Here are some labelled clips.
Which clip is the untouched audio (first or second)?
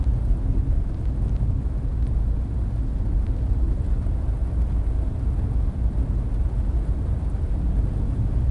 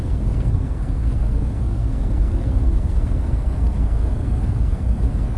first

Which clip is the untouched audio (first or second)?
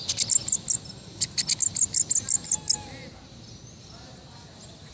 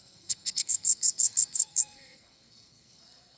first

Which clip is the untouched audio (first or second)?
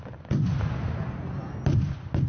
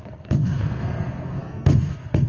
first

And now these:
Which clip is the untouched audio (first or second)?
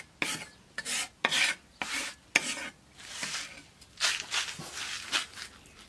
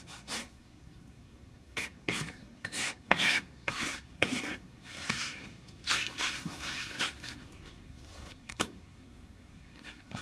first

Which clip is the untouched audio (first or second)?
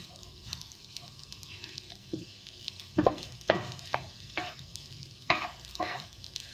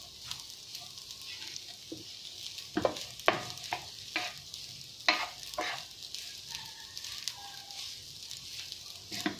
second